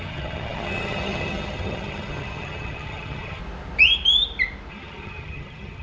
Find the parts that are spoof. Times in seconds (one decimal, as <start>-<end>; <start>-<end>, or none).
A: 0.0-3.4; 4.7-5.8